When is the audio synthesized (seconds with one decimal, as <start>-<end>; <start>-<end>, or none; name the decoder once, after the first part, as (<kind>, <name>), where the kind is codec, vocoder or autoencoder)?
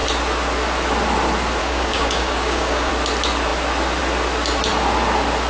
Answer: 1.6-2.9 (codec, DAC)